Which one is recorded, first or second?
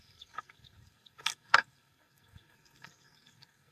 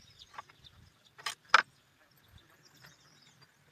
second